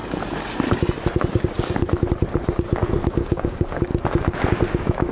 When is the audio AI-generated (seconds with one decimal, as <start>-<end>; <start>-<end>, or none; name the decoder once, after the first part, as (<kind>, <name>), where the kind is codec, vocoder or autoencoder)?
3.1-3.9 (codec, DAC); 4.5-5.1